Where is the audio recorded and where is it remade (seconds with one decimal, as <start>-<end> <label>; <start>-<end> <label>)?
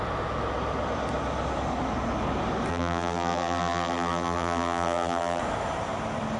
0.0-2.7 recorded; 2.7-5.4 remade; 5.4-6.4 recorded